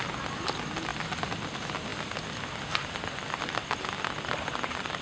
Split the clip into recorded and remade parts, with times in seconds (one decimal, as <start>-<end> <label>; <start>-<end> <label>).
0.0-5.0 recorded